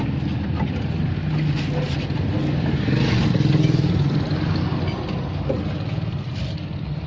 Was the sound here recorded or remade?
recorded